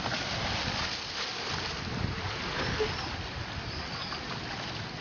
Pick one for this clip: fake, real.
real